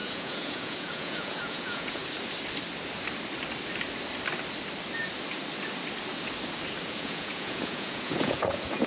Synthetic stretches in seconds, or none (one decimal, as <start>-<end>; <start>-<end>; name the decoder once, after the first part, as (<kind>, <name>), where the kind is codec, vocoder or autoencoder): 0.0-2.0 (vocoder, Vocos); 7.0-8.9